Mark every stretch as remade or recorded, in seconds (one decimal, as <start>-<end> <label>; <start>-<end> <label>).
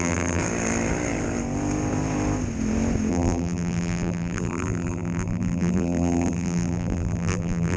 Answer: 0.0-0.4 remade; 0.4-3.1 recorded; 3.1-7.8 remade